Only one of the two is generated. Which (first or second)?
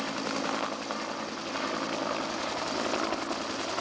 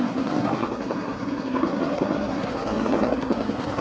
second